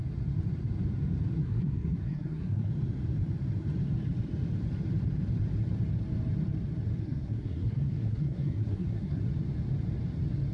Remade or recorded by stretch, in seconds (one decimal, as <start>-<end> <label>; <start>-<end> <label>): 0.0-1.4 recorded; 1.4-2.7 remade; 2.7-7.0 recorded; 7.0-9.2 remade; 9.2-10.5 recorded